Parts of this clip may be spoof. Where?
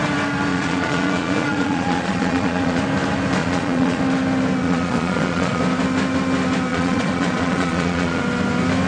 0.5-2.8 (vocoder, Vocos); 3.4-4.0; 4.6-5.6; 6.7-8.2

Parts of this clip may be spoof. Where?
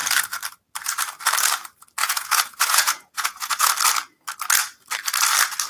2.0-3.7 (vocoder, Vocos)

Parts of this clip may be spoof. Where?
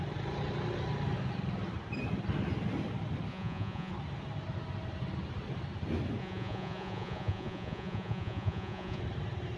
3.3-3.9 (vocoder, Vocos); 6.2-9.0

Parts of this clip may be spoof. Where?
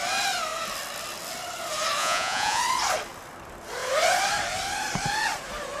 2.0-2.6 (vocoder, Vocos)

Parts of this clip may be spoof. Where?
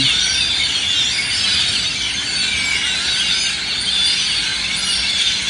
none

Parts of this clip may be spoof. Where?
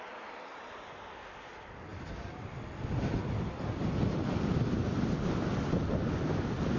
none